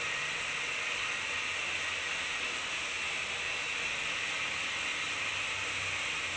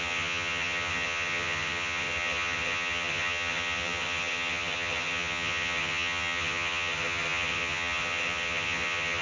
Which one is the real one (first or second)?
first